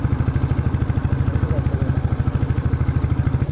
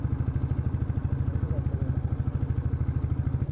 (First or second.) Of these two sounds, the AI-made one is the first